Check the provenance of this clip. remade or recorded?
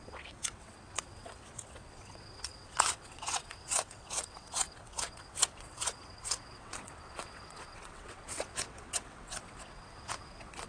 remade